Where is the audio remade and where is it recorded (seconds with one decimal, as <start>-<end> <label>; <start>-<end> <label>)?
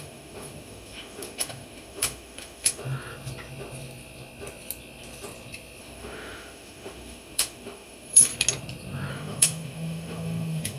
0.0-2.8 remade; 2.8-5.8 recorded; 5.8-8.3 remade; 8.3-9.1 recorded; 9.1-10.8 remade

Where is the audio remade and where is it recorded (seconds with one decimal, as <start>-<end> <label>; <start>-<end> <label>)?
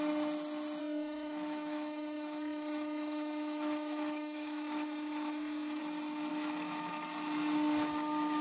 0.0-0.8 recorded; 0.8-5.8 remade; 5.8-6.3 recorded; 6.3-6.9 remade; 6.9-8.4 recorded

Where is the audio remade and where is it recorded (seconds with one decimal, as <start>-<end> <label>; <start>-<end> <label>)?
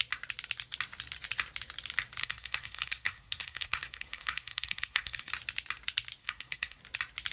0.0-2.2 recorded; 2.2-5.3 remade; 5.3-6.2 recorded; 6.2-6.8 remade; 6.8-7.3 recorded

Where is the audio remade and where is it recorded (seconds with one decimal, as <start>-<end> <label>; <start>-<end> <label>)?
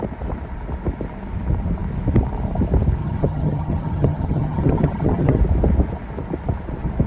0.0-3.0 recorded; 3.0-5.4 remade; 5.4-7.1 recorded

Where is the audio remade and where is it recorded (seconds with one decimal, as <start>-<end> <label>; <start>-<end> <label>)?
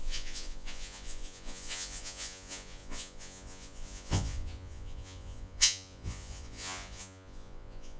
0.0-8.0 remade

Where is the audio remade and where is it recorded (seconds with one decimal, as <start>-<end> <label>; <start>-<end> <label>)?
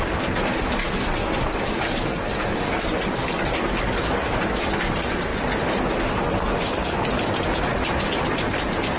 0.0-0.8 recorded; 0.8-4.4 remade; 4.4-9.0 recorded